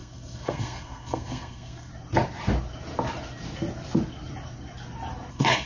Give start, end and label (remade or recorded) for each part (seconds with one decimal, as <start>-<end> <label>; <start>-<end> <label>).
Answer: 0.0-1.9 remade; 1.9-5.3 recorded; 5.3-5.7 remade